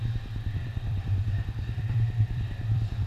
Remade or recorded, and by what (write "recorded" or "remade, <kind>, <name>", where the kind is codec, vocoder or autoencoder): remade, vocoder, BigVGAN v2